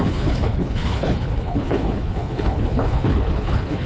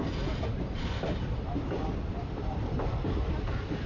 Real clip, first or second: second